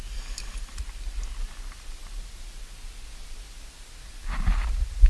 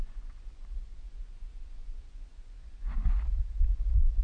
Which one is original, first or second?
first